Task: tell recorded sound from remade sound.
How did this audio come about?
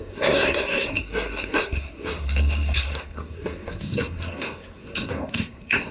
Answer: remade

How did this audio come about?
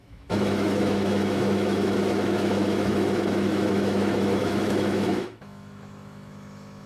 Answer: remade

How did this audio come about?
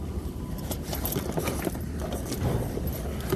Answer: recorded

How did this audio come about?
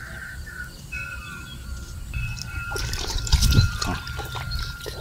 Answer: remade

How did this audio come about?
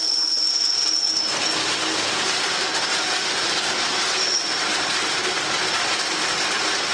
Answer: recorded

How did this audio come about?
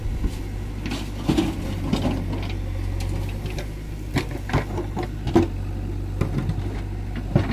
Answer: recorded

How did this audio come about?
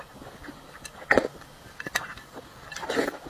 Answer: recorded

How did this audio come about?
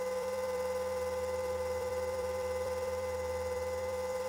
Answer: remade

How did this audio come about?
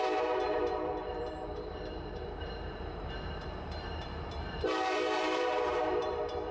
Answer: remade